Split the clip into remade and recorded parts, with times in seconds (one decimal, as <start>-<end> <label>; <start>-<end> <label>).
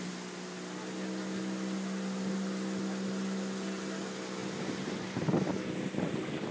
0.0-6.5 recorded